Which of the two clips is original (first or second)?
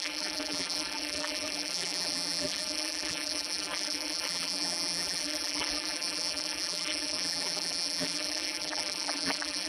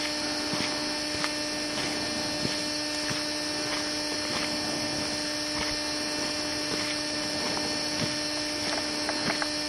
second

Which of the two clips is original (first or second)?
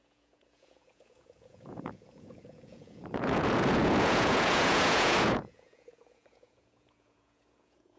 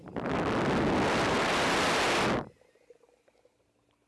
second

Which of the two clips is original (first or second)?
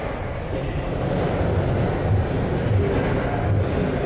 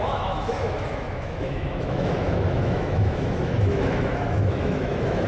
first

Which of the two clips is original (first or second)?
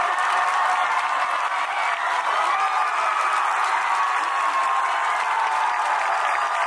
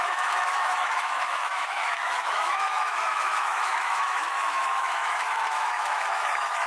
first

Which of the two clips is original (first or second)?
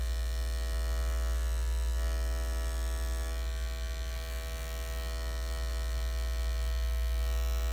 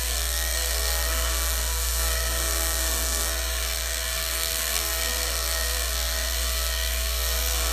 first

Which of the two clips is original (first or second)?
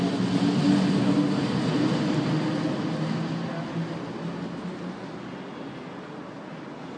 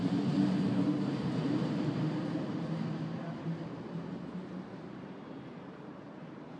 first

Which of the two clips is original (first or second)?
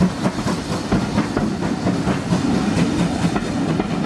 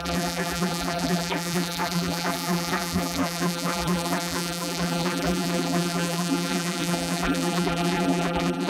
first